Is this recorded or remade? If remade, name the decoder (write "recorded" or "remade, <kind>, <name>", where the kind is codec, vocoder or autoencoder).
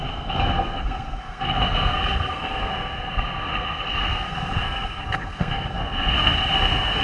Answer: remade, codec, SNAC